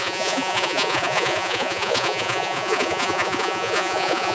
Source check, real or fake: fake